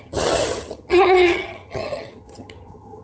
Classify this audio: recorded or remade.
remade